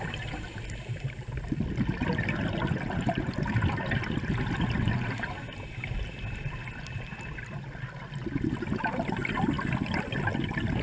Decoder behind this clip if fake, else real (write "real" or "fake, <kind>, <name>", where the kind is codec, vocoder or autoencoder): real